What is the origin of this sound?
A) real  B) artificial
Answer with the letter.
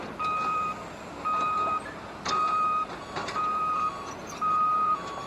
B